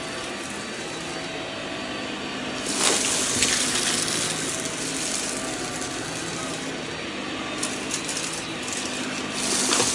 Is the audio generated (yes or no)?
no